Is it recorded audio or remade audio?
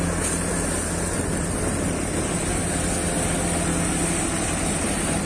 recorded